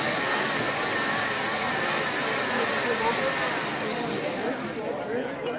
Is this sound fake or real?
real